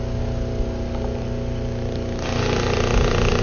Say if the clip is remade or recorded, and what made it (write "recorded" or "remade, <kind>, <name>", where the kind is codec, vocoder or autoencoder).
recorded